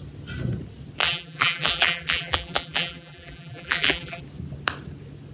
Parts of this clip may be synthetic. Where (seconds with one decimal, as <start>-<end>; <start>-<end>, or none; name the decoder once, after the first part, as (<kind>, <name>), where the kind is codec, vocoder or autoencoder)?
1.0-4.2 (vocoder, BigVGAN v2)